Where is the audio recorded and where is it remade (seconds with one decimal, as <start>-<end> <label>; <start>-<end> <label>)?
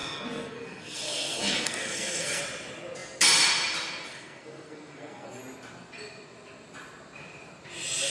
0.0-2.4 remade; 2.4-4.1 recorded; 4.1-5.4 remade; 5.4-8.1 recorded